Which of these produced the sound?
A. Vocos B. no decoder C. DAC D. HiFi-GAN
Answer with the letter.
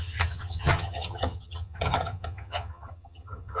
D